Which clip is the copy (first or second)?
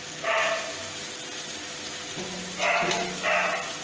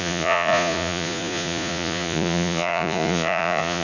second